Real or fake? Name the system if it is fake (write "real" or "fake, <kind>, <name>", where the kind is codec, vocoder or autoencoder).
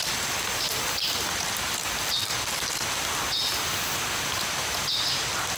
real